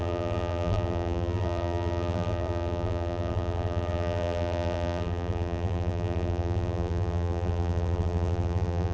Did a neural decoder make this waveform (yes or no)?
yes